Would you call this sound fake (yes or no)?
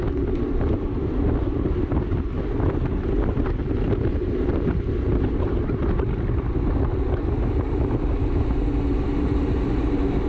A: no